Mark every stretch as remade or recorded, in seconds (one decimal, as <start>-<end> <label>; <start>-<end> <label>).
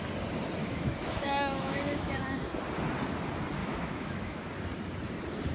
0.0-0.6 recorded; 0.6-2.2 remade; 2.2-3.6 recorded; 3.6-4.5 remade; 4.5-5.5 recorded